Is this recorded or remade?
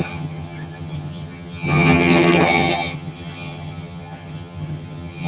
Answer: remade